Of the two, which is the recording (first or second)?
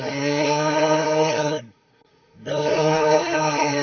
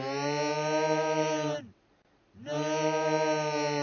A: second